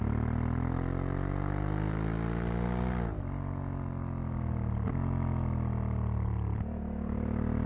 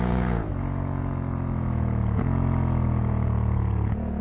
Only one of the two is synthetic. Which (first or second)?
second